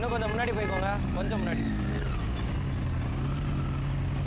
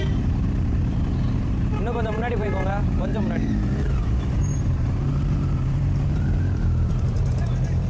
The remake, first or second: second